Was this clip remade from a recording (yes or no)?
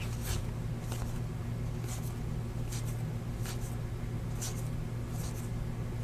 no